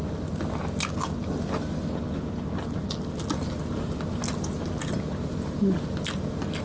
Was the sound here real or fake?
real